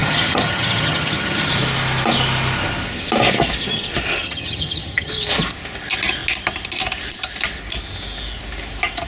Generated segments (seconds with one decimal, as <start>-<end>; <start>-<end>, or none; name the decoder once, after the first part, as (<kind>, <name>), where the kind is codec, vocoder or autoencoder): 0.0-1.5 (vocoder, HiFi-GAN); 4.2-5.1